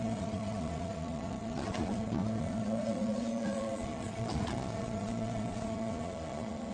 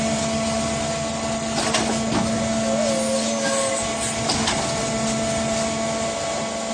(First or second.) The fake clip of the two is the first